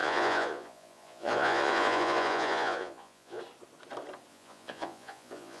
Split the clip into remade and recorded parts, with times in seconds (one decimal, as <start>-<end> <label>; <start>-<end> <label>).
0.0-3.4 remade; 3.4-4.3 recorded; 4.3-5.6 remade